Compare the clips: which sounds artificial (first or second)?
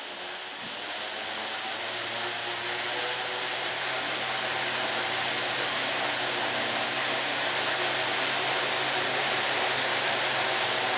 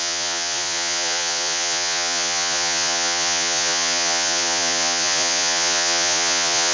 second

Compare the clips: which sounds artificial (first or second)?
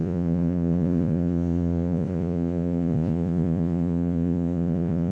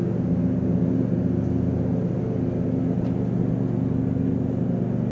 first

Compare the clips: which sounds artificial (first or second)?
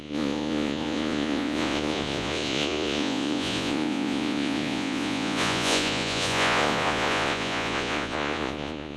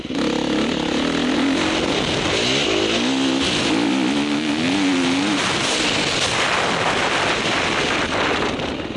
first